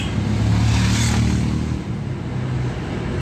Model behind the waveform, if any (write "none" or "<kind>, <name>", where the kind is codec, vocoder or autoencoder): none